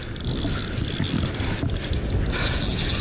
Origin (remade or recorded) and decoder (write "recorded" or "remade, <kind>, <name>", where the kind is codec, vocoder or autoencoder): recorded